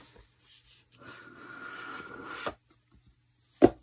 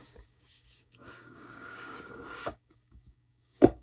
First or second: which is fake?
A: second